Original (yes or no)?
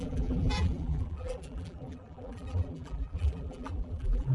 no